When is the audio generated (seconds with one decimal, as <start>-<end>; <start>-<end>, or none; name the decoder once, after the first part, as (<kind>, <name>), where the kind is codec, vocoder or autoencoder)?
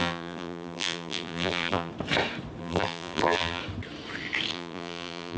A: 0.0-1.9 (vocoder, BigVGAN v2); 2.6-3.6; 4.5-5.4